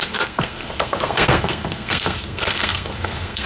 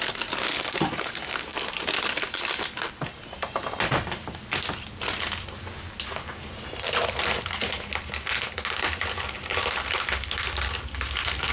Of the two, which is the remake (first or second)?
first